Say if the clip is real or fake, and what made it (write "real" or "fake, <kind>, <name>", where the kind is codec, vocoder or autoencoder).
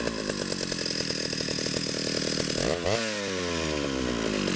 real